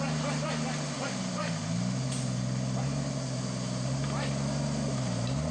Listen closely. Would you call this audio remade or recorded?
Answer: recorded